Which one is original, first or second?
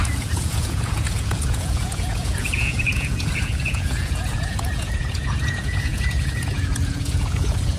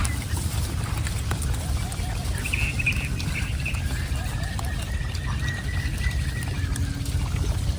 second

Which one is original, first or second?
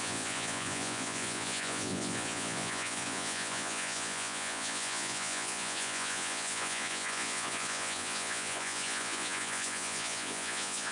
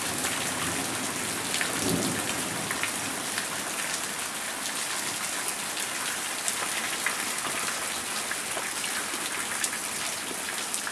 second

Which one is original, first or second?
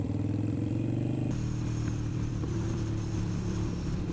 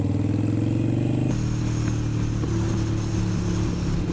second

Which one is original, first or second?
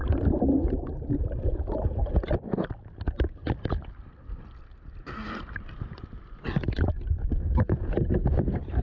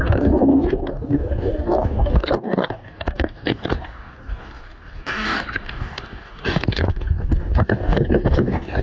first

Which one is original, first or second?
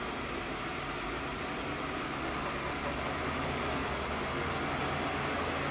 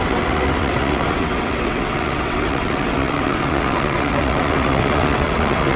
first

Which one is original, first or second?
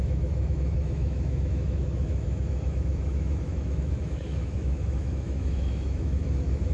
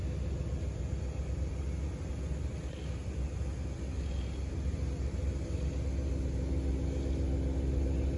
second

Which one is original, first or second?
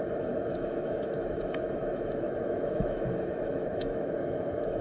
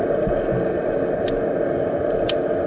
second